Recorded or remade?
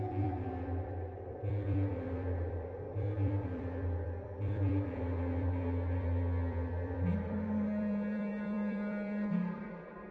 remade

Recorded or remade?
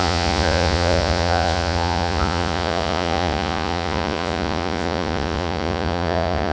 remade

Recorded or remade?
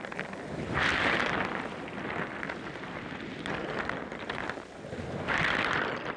recorded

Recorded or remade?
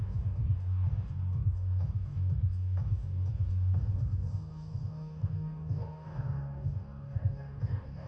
remade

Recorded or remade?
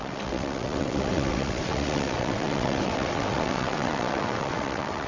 remade